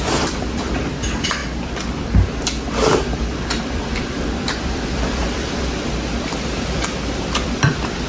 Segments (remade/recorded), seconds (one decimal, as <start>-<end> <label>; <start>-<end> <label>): 0.0-1.4 remade; 1.4-2.7 recorded; 2.7-8.1 remade